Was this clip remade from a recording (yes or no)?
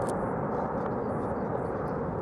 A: no